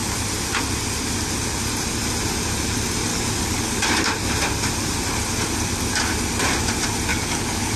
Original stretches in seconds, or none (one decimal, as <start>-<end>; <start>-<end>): 0.0-3.1; 3.8-7.1